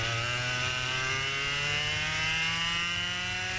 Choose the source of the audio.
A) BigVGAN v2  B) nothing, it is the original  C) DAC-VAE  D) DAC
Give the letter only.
B